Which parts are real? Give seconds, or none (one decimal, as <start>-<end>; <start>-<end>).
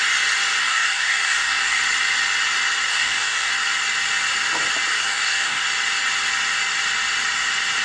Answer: 0.0-0.6; 1.8-2.9; 3.5-4.9; 5.6-7.8